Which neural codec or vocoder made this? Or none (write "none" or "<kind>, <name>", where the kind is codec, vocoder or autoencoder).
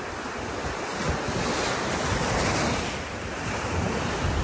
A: none